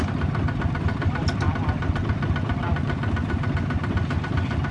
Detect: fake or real real